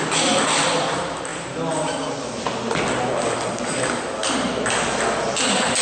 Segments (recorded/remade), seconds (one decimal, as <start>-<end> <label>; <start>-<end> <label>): 0.0-5.8 recorded